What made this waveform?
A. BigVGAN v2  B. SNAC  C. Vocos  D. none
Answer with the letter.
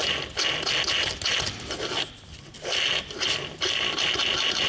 D